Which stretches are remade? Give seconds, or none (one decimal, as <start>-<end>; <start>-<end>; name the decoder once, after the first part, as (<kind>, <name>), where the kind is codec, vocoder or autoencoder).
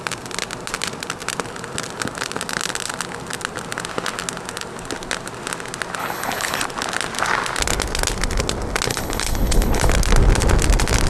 6.0-6.6 (codec, HILCodec); 8.9-9.9